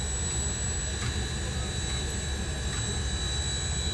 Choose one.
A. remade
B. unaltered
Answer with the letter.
B